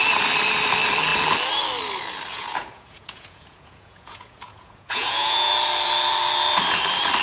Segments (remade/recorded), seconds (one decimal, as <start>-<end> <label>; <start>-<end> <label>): 0.0-2.3 recorded; 2.3-5.5 remade; 5.5-7.2 recorded

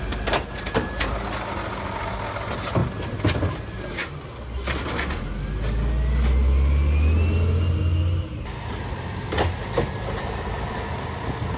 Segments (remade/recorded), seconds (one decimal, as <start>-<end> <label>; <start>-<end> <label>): 0.0-11.6 recorded

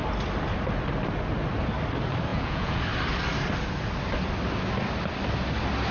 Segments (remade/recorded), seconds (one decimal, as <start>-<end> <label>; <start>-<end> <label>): 0.0-2.3 recorded; 2.3-2.8 remade; 2.8-5.9 recorded

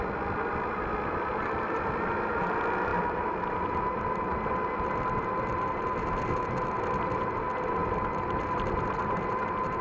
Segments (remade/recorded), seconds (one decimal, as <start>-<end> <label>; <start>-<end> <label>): 0.0-9.8 recorded

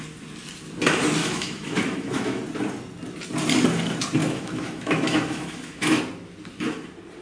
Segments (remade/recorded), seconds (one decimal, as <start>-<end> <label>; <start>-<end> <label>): 0.0-1.2 recorded; 1.2-2.4 remade; 2.4-4.2 recorded; 4.2-6.0 remade; 6.0-7.2 recorded

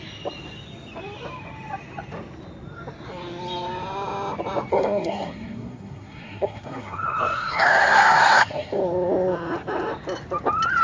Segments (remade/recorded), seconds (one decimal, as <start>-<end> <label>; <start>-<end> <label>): 0.0-4.7 recorded; 4.7-8.8 remade; 8.8-10.8 recorded